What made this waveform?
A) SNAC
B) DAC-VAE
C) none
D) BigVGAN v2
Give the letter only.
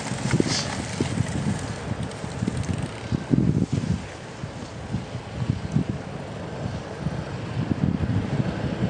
C